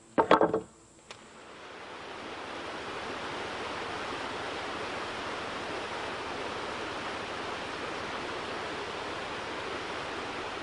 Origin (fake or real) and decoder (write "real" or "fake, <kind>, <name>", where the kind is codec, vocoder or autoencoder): real